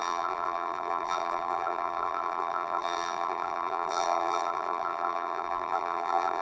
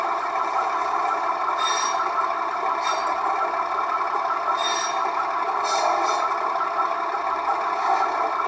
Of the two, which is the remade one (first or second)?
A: first